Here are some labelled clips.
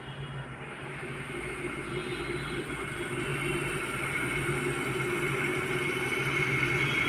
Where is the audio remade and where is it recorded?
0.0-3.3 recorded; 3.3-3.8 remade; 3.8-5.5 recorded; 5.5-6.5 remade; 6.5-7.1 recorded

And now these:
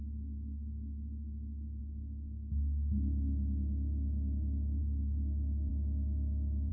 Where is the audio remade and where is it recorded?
0.0-1.8 remade; 1.8-4.8 recorded; 4.8-5.7 remade; 5.7-6.7 recorded

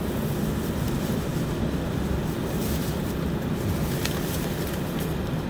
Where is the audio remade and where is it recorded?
0.0-5.5 recorded

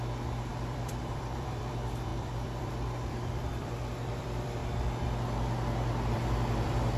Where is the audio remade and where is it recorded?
0.0-4.6 remade; 4.6-6.1 recorded; 6.1-7.0 remade